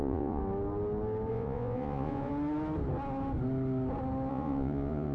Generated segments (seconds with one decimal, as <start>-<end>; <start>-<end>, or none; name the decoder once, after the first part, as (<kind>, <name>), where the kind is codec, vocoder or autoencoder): 0.0-0.4 (vocoder, Vocos); 1.3-2.3; 4.3-5.1